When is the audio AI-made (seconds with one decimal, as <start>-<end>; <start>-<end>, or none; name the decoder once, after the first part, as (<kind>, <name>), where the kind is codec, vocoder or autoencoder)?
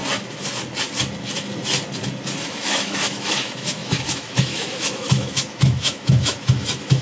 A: 2.5-7.0 (autoencoder, DAC-VAE)